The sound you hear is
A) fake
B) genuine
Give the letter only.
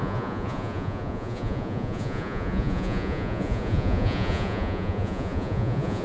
A